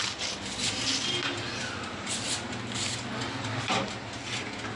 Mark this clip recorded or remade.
recorded